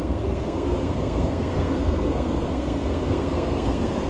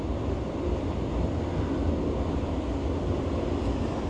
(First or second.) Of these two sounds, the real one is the second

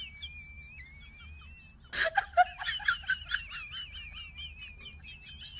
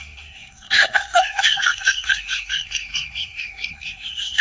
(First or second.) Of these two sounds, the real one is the first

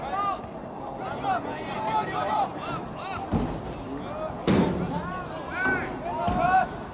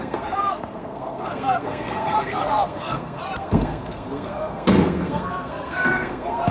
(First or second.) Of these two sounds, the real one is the first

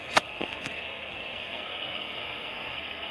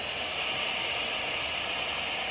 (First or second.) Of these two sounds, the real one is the second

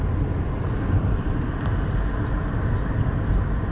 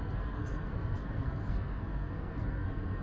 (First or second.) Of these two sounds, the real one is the first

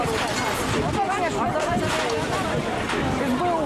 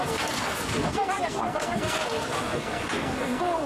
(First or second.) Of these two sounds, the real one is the first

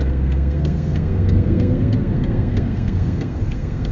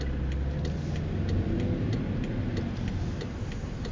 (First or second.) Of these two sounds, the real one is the second